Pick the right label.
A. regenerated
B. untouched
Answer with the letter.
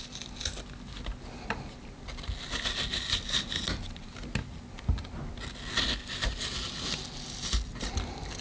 B